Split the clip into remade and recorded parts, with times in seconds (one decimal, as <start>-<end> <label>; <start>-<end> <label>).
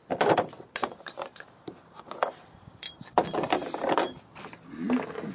0.0-0.8 recorded; 0.8-4.0 remade; 4.0-5.3 recorded